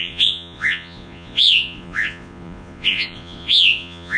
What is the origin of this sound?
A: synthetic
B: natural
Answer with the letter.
A